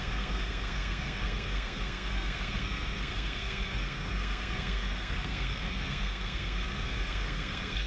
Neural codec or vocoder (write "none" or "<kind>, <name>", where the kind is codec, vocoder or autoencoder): codec, SNAC